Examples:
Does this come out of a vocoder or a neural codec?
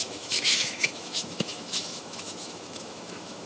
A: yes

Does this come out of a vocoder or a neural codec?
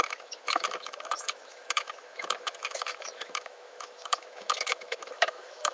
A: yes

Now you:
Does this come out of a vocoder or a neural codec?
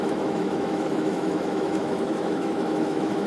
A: yes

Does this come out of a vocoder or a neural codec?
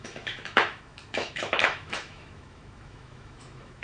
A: yes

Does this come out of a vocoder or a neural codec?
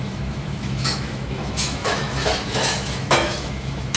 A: yes